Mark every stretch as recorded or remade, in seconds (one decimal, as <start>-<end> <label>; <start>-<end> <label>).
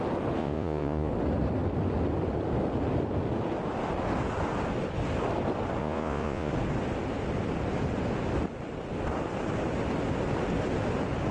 0.0-0.4 recorded; 0.4-1.1 remade; 1.1-5.8 recorded; 5.8-6.5 remade; 6.5-11.3 recorded